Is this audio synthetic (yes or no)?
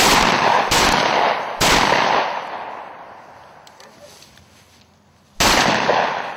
no